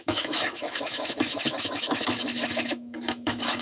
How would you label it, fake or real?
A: fake